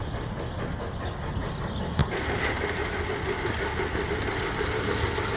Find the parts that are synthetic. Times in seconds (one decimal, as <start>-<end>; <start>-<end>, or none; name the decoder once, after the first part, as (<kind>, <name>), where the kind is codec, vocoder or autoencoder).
none